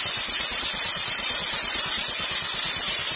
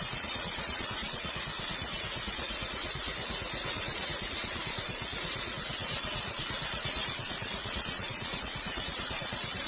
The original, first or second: first